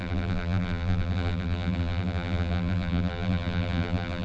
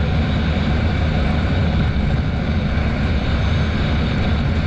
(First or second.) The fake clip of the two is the first